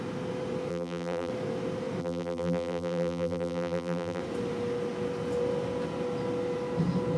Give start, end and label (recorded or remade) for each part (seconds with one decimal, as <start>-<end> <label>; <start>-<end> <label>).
0.0-0.7 recorded; 0.7-1.3 remade; 1.3-2.0 recorded; 2.0-4.2 remade; 4.2-7.2 recorded